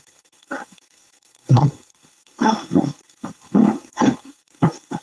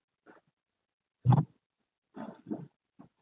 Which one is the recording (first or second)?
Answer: second